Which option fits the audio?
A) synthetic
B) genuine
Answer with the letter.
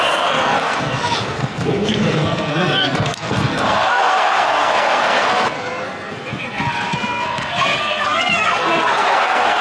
A